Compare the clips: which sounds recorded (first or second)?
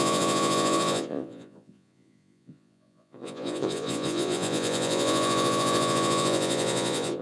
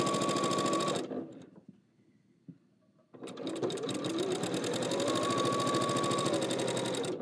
second